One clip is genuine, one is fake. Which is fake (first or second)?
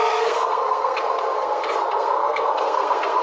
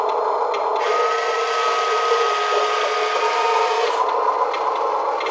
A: first